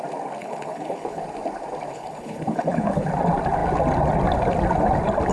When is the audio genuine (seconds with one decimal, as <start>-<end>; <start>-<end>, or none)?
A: 0.0-0.4; 1.2-1.9; 3.1-5.3